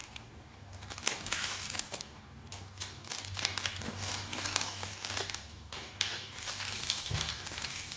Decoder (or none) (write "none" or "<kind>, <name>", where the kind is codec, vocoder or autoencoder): codec, DAC